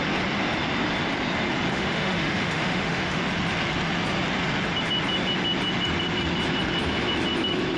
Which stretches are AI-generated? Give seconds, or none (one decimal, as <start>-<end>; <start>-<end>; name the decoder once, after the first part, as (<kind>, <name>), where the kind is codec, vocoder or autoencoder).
1.7-3.2 (autoencoder, DAC-VAE)